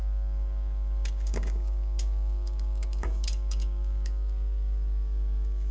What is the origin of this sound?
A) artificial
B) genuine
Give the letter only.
A